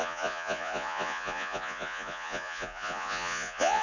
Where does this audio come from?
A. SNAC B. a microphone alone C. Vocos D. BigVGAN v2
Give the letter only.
C